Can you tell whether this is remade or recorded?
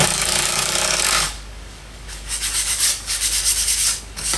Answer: remade